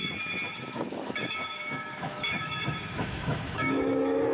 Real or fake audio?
fake